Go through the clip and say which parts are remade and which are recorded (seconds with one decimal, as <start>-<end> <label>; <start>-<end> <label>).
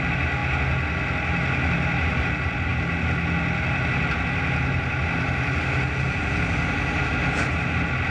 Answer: 0.0-8.1 recorded